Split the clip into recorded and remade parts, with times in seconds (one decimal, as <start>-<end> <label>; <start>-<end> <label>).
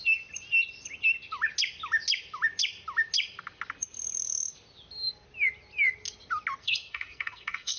0.0-6.6 recorded; 6.6-7.8 remade